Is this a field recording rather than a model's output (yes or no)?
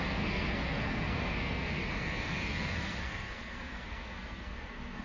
no